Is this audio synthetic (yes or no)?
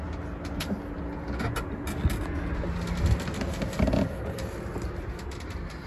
no